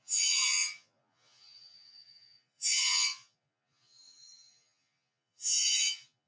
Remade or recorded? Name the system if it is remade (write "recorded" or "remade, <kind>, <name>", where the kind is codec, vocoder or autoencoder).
remade, vocoder, Vocos